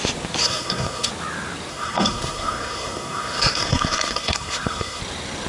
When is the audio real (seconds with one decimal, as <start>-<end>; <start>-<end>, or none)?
0.0-0.4; 1.1-1.7; 5.0-5.5